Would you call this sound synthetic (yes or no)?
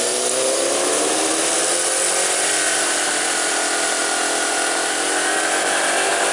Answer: no